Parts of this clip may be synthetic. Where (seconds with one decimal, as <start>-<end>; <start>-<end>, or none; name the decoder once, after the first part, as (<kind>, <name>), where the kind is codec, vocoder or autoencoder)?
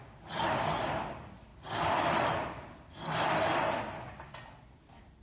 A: none